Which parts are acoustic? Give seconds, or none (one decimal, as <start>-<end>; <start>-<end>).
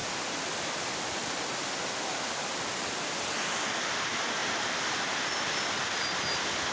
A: 0.0-4.4; 5.2-6.7